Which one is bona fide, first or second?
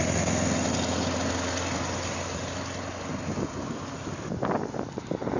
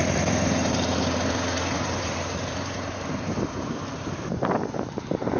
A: first